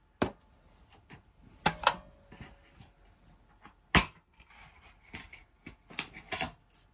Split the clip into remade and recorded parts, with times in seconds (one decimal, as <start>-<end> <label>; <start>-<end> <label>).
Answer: 0.0-4.0 recorded; 4.0-4.5 remade; 4.5-6.9 recorded